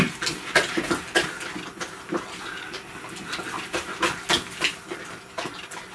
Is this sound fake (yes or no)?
no